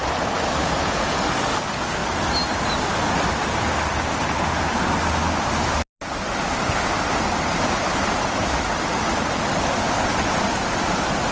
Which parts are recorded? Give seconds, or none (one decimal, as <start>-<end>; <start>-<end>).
0.0-0.6; 1.2-11.3